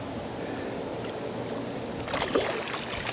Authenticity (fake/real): real